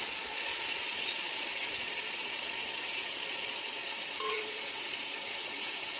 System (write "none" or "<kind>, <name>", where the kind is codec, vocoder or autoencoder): vocoder, Vocos